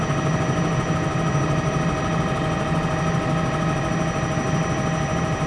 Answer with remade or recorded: recorded